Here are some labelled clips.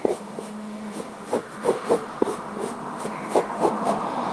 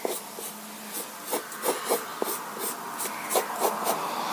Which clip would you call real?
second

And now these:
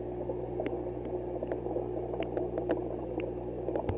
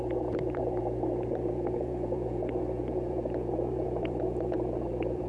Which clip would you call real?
first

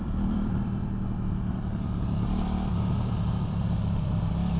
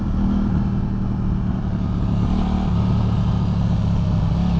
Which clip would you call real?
second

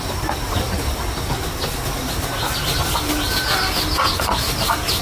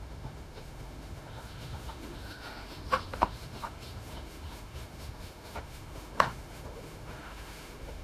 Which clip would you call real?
first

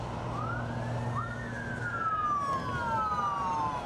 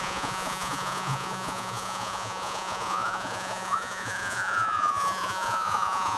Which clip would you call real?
first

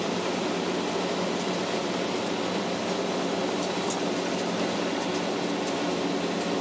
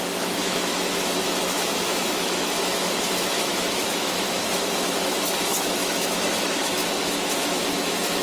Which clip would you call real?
first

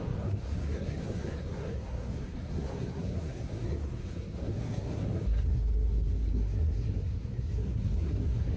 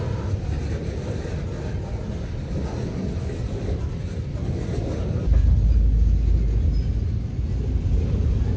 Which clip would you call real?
second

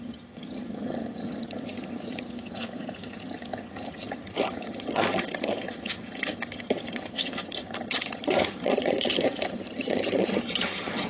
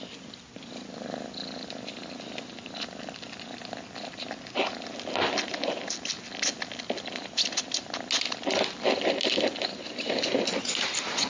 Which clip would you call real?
second